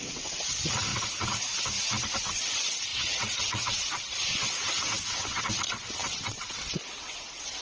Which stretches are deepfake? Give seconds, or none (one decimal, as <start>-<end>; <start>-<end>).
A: 0.0-0.9; 2.1-7.6